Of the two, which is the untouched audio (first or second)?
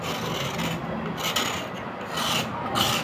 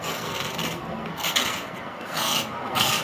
first